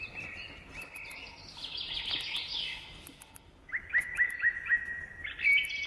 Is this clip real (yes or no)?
yes